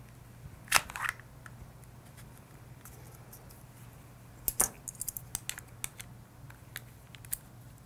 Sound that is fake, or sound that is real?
real